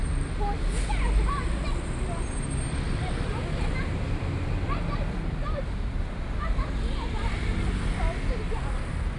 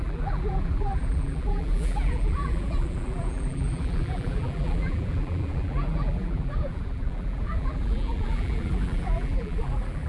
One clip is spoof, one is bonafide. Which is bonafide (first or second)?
first